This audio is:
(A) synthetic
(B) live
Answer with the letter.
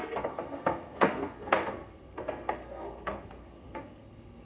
A